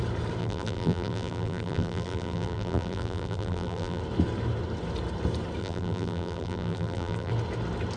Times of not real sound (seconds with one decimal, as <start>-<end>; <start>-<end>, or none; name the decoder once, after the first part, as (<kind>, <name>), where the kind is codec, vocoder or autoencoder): 0.4-4.0 (vocoder, BigVGAN v2); 5.6-7.3